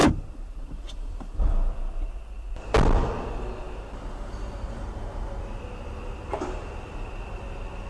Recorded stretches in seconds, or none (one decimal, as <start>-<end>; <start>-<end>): 0.0-7.9

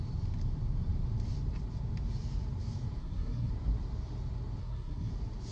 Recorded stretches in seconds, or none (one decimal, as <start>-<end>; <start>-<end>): 0.0-3.0; 3.5-4.6; 5.1-5.5

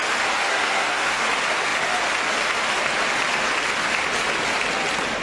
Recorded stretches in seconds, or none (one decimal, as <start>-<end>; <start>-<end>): 0.0-0.5; 1.2-5.2

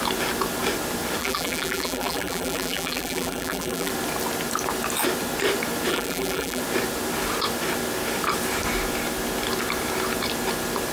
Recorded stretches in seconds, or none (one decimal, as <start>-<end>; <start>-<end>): 0.0-1.2; 3.9-5.9; 6.6-10.9